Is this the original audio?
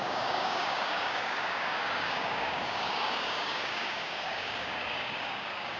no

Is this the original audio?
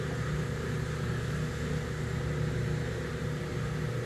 yes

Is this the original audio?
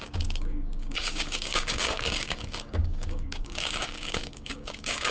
no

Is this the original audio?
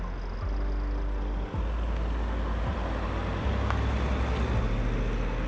yes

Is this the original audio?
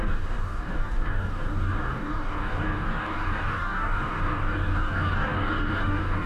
no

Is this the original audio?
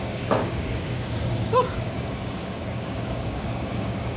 no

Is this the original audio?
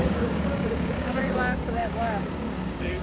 no